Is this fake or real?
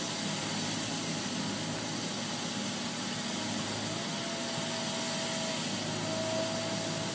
real